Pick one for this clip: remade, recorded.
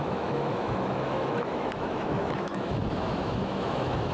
remade